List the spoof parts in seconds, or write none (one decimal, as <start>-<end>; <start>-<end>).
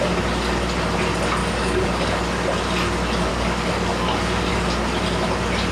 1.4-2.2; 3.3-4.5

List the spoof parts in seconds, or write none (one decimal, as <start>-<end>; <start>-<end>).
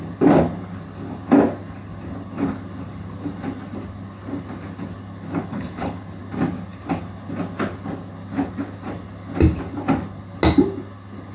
5.4-6.2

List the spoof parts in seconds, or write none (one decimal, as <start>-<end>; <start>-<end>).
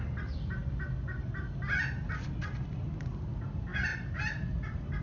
none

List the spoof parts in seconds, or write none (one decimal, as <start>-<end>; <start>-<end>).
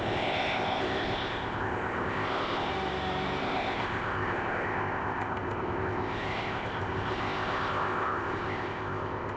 0.0-2.7; 3.4-9.4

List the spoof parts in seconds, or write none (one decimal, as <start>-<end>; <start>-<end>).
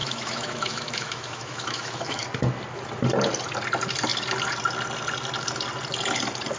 0.0-2.2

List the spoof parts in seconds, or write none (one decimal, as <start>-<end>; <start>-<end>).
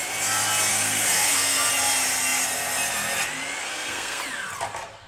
0.7-1.7; 3.6-4.2